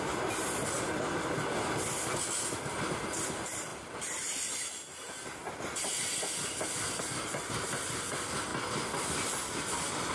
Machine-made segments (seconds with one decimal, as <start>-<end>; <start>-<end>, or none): none